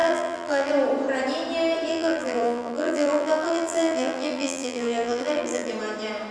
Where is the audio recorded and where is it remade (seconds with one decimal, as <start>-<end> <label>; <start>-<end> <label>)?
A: 0.0-0.7 remade; 0.7-1.9 recorded; 1.9-5.7 remade; 5.7-6.3 recorded

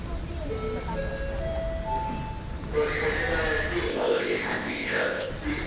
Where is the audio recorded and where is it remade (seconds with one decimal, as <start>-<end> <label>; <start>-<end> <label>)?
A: 0.0-3.9 recorded; 3.9-5.3 remade; 5.3-5.7 recorded

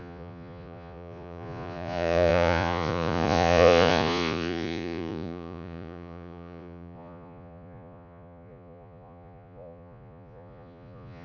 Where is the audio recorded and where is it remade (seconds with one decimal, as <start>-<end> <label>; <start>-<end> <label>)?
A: 0.0-11.2 remade

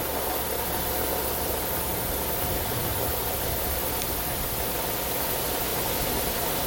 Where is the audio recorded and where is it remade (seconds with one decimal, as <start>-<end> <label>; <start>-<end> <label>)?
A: 0.0-6.7 recorded

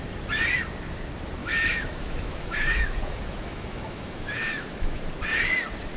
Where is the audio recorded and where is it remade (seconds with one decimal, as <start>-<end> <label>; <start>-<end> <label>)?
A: 0.0-1.4 recorded; 1.4-5.0 remade; 5.0-6.0 recorded

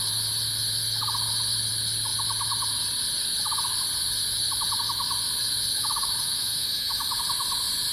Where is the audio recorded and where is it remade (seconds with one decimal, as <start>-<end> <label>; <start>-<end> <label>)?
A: 0.0-5.7 recorded; 5.7-7.2 remade; 7.2-7.9 recorded

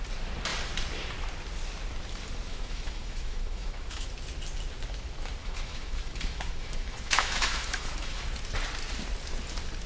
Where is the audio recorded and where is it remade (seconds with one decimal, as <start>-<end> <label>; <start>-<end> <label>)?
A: 0.0-2.5 recorded; 2.5-4.1 remade; 4.1-5.4 recorded; 5.4-8.3 remade; 8.3-9.9 recorded

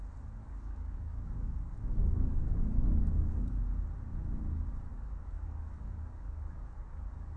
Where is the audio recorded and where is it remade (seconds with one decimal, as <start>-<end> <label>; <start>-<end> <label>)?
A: 0.0-0.4 recorded; 0.4-3.6 remade; 3.6-4.9 recorded; 4.9-7.4 remade